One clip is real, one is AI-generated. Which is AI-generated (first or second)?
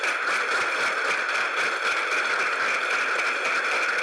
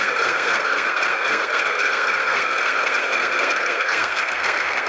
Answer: second